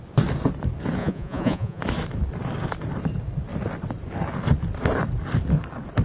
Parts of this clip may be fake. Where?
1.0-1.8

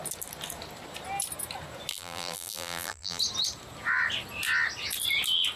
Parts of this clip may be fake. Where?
1.9-3.2